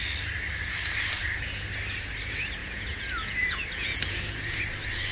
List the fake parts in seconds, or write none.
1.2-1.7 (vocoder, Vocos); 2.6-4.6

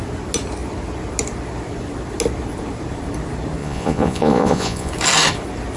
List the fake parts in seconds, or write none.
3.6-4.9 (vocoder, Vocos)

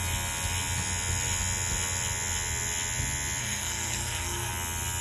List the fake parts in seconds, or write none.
3.4-4.5 (codec, SNAC)